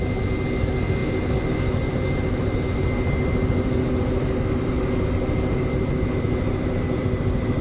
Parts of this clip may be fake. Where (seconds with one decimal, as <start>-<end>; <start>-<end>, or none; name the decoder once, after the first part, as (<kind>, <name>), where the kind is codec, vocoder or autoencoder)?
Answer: none